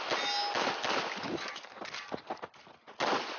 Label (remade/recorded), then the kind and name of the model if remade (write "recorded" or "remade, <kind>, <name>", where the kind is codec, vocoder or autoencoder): recorded